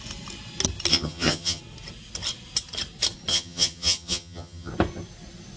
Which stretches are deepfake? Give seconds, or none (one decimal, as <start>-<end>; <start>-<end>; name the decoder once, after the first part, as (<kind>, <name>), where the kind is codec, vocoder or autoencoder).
0.9-1.6 (vocoder, HiFi-GAN); 3.3-4.7